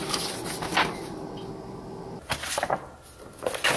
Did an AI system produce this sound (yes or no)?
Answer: no